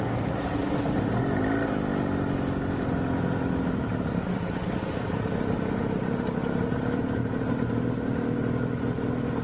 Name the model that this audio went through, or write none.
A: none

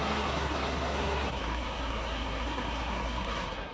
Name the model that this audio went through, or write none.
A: codec, SNAC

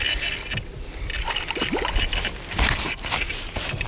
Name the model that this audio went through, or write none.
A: none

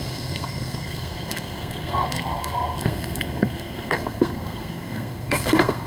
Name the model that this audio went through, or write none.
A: codec, SNAC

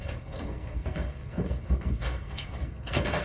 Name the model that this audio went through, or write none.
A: codec, SNAC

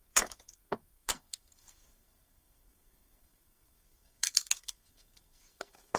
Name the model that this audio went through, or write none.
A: codec, SNAC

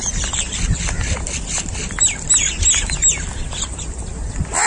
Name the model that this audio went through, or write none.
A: none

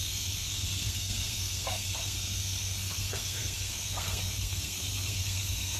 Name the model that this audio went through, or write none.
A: codec, SNAC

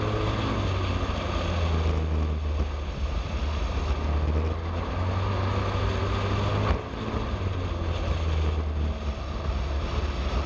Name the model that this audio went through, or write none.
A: none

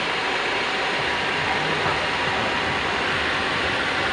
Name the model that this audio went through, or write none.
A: none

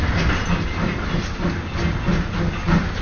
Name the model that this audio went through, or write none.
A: none